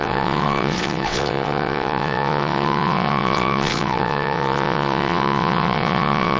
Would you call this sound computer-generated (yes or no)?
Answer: yes